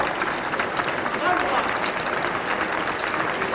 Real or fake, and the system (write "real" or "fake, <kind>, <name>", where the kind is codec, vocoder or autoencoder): real